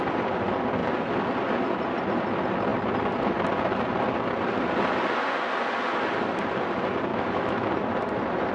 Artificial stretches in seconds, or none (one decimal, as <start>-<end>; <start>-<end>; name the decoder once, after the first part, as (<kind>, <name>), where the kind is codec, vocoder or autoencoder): 7.1-7.7 (autoencoder, DAC-VAE)